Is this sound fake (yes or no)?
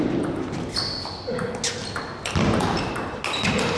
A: no